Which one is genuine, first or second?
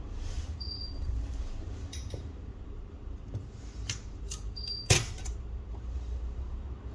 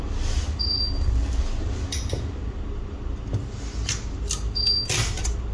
second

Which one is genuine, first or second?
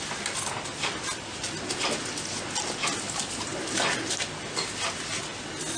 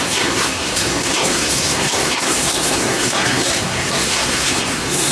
first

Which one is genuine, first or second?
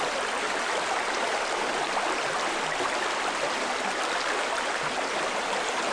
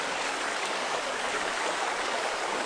first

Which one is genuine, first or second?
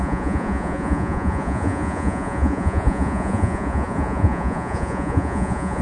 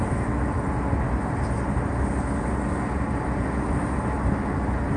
second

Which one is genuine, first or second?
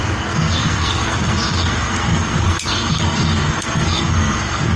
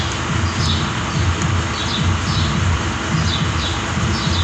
second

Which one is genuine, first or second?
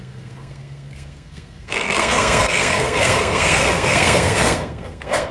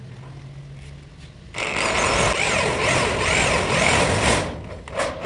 second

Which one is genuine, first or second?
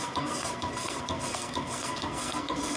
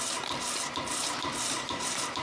second